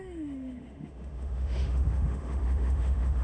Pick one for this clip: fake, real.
fake